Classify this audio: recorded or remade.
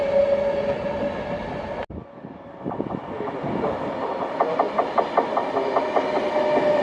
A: recorded